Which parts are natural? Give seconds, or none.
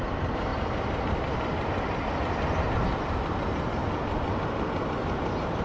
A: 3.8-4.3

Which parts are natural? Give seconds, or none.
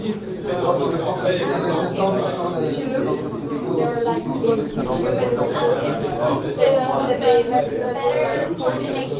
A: none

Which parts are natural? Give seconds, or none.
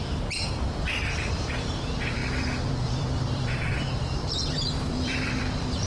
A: none